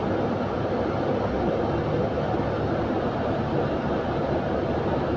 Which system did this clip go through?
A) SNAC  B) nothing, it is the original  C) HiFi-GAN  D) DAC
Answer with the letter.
B